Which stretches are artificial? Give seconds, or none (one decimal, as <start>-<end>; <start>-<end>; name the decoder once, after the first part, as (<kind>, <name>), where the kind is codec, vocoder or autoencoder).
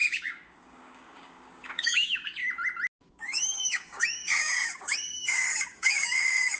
0.0-2.4 (codec, DAC); 3.1-6.6